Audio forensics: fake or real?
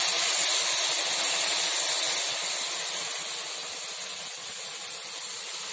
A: real